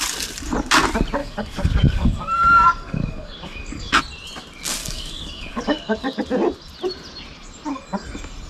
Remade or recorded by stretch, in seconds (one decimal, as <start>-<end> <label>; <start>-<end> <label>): 0.0-1.2 recorded; 1.2-3.9 remade; 3.9-4.8 recorded; 4.8-6.2 remade; 6.2-8.5 recorded